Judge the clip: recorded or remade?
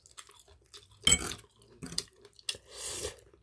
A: recorded